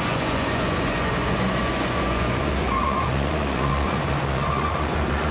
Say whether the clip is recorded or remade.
remade